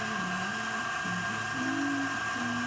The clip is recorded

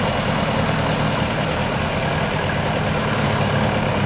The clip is recorded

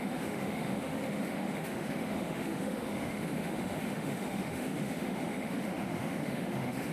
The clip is remade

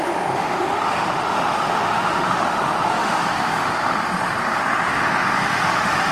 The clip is remade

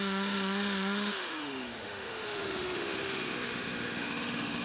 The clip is remade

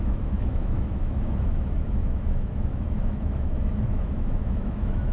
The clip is remade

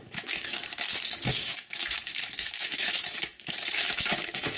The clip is remade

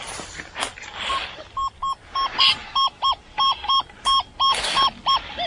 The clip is recorded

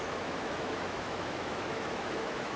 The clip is remade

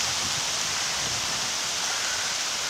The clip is recorded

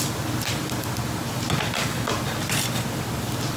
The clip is recorded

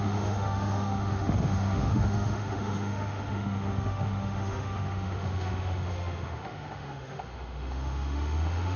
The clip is remade